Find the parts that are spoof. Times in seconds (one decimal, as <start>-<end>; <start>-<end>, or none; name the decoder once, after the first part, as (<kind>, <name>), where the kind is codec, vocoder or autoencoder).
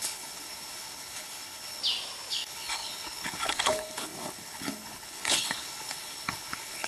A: 0.0-1.8 (codec, HILCodec); 2.3-6.9